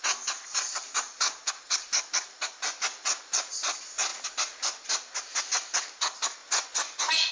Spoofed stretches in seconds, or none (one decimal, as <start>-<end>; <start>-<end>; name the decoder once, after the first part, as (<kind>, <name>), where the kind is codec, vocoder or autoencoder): 6.4-7.3 (vocoder, Vocos)